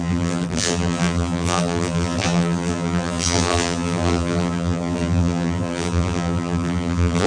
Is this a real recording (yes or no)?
no